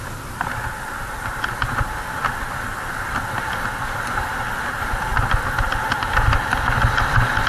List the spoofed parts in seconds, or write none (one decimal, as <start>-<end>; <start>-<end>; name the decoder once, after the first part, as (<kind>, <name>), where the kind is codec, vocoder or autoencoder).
none